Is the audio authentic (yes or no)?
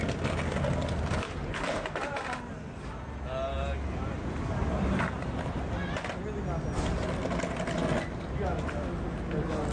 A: yes